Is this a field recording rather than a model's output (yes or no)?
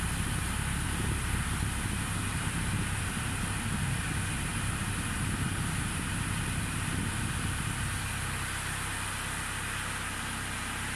yes